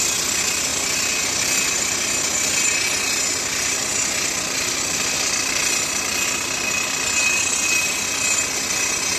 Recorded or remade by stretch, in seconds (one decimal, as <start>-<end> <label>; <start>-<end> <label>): 0.0-9.2 recorded